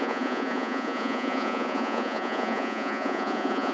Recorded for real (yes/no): no